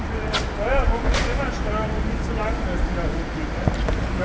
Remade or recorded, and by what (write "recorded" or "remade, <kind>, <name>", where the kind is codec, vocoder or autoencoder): recorded